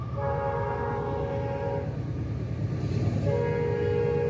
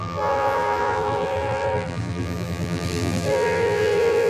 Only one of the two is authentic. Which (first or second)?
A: first